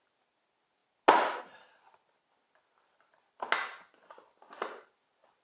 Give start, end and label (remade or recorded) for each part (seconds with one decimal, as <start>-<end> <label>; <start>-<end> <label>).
0.0-5.4 recorded